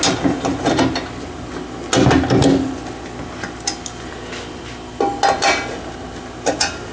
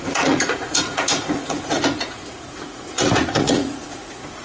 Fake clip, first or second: second